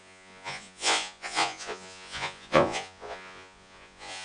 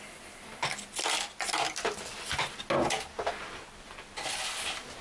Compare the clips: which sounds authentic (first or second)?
second